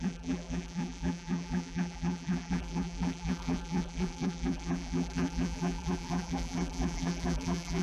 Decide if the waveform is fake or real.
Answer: fake